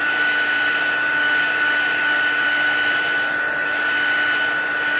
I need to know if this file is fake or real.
fake